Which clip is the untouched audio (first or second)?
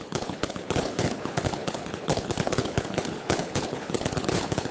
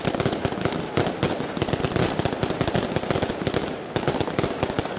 second